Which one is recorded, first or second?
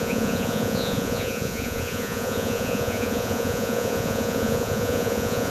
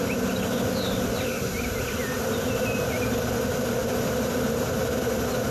second